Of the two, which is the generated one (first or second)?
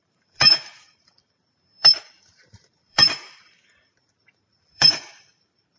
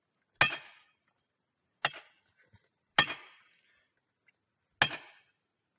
first